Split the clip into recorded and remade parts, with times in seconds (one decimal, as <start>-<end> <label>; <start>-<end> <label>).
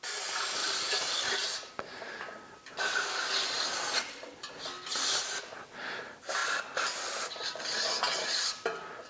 0.0-0.6 recorded; 0.6-1.7 remade; 1.7-9.1 recorded